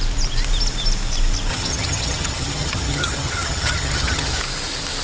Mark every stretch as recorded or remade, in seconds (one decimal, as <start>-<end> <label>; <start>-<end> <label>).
0.0-1.5 recorded; 1.5-4.4 remade; 4.4-5.0 recorded